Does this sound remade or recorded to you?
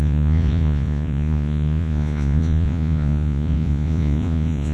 remade